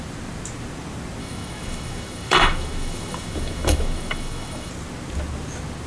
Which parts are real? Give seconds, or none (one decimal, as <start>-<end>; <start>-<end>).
0.0-1.2; 4.7-5.9